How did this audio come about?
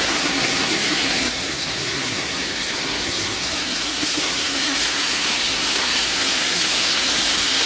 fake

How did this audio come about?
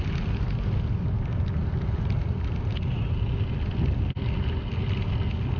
real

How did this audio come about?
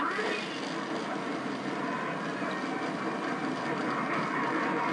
real